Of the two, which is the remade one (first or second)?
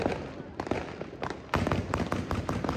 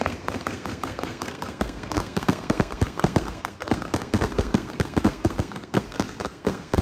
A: second